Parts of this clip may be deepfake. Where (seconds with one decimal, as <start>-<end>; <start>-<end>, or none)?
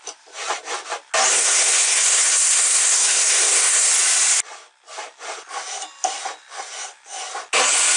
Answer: 1.3-3.9